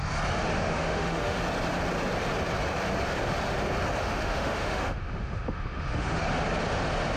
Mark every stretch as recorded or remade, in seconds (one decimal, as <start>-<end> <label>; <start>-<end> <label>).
0.0-0.5 recorded; 0.5-1.4 remade; 1.4-4.0 recorded; 4.0-6.2 remade; 6.2-7.2 recorded